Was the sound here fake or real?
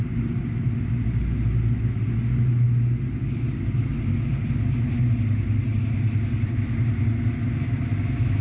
real